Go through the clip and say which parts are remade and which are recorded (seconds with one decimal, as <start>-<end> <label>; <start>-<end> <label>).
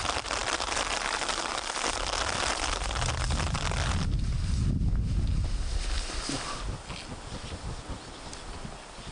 0.0-9.1 recorded